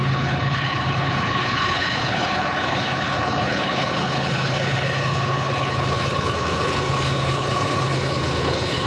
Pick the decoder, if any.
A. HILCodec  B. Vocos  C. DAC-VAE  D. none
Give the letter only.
A